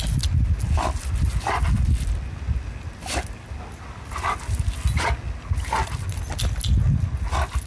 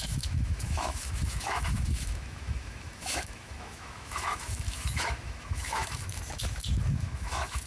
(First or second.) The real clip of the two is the first